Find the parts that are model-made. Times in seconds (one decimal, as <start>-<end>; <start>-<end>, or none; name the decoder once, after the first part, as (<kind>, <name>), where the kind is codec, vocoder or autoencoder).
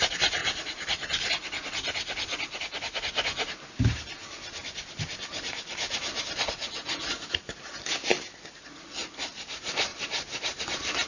none